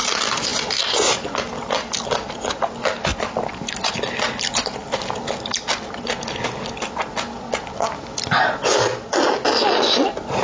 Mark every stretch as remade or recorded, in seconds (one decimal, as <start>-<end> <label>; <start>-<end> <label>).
0.0-3.1 recorded; 3.1-3.9 remade; 3.9-10.4 recorded